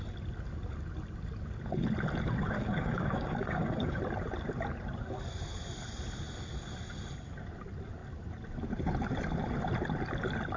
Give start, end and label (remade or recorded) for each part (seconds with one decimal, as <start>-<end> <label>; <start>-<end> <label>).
0.0-2.6 recorded; 2.6-4.0 remade; 4.0-10.6 recorded